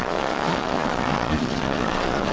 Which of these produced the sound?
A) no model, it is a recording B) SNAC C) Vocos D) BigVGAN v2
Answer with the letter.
C